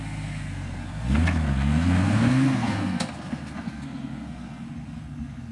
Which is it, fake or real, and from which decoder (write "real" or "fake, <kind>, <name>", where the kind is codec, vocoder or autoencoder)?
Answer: fake, codec, SNAC